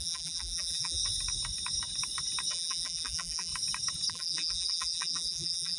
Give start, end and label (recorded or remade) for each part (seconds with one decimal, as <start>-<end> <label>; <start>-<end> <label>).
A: 0.0-1.0 remade; 1.0-2.5 recorded; 2.5-3.5 remade; 3.5-4.1 recorded; 4.1-5.8 remade